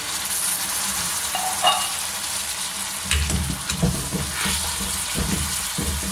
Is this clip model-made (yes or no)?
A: no